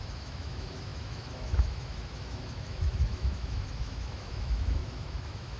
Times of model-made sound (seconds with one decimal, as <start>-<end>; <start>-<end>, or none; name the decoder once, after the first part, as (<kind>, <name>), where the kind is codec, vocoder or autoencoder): 0.0-5.6 (autoencoder, DAC-VAE)